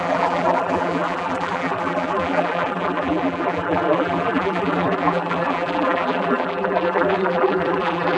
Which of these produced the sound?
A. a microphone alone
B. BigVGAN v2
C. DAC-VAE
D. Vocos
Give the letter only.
B